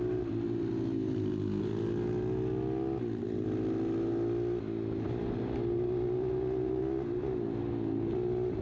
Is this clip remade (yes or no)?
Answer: no